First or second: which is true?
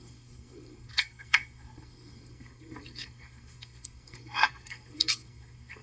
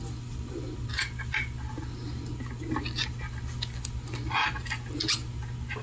second